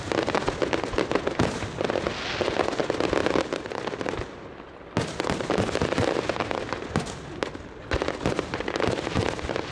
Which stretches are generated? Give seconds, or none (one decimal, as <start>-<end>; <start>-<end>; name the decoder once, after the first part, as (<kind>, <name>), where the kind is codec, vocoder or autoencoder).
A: none